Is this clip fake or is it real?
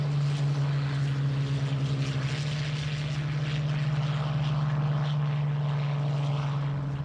real